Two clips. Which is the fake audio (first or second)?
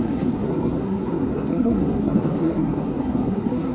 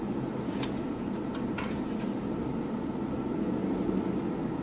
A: first